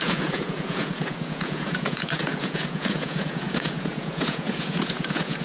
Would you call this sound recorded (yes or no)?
no